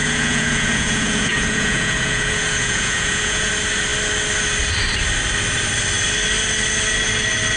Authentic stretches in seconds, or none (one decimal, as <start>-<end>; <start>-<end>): 3.5-7.6